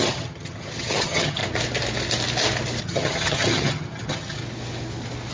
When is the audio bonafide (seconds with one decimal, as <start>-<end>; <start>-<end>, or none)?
1.4-2.8; 4.4-5.3